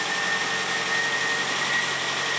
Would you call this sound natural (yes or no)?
yes